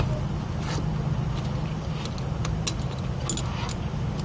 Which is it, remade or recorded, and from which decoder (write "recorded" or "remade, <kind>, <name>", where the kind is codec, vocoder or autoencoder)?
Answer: recorded